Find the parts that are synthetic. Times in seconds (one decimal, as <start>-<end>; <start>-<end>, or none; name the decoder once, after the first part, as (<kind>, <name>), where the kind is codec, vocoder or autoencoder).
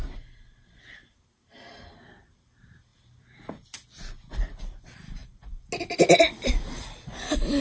2.9-4.6 (vocoder, BigVGAN v2)